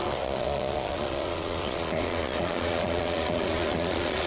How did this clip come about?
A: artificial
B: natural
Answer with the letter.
A